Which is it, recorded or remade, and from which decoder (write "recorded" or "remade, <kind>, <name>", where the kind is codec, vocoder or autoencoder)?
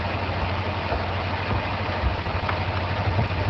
recorded